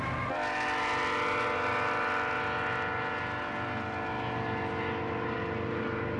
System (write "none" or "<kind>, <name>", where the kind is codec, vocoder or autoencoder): none